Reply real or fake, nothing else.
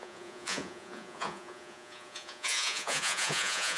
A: fake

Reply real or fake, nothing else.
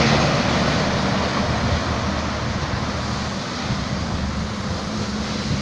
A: real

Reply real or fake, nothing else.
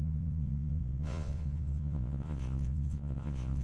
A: fake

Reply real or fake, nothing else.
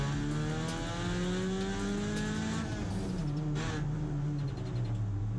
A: real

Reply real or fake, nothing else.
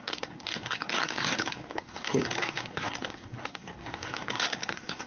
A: fake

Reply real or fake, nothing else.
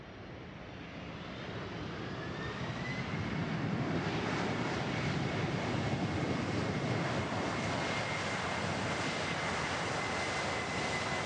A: fake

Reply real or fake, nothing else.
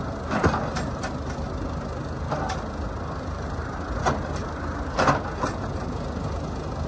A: real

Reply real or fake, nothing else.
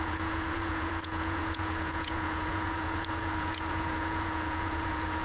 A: fake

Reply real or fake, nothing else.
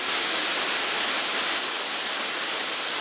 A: real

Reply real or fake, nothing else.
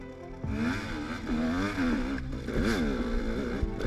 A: real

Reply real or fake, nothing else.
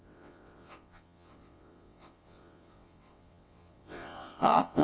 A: fake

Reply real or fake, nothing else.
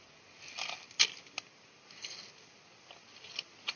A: real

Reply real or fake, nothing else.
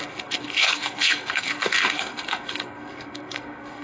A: fake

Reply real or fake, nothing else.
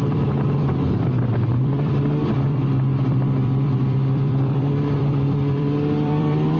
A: fake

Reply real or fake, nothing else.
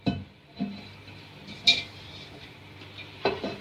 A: fake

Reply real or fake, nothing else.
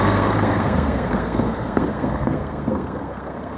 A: fake